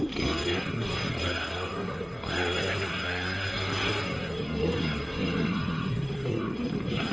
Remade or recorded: remade